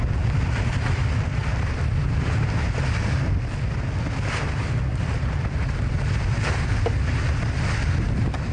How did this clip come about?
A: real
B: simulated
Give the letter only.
A